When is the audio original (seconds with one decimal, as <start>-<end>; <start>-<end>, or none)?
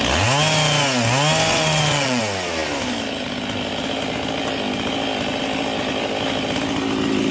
0.0-1.5; 2.2-7.3